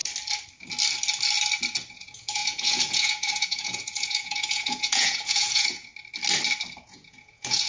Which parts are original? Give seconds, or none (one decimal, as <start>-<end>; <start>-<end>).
0.0-1.9; 5.9-6.8